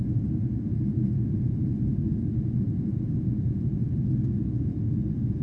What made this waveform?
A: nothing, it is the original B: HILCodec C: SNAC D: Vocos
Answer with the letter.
D